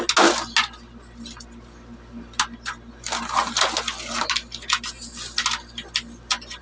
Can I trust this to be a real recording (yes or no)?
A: yes